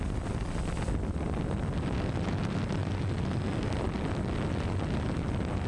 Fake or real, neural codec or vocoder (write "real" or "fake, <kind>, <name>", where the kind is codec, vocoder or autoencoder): real